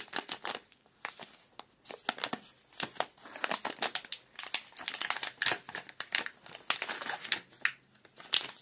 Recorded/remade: recorded